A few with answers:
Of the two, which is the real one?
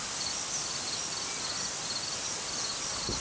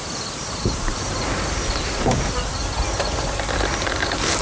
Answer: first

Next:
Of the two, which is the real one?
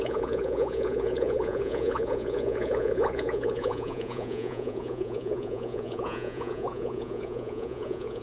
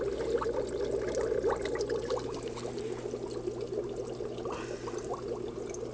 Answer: second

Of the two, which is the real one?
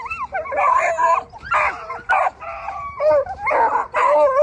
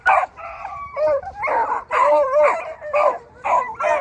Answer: first